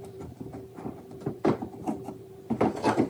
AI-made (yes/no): yes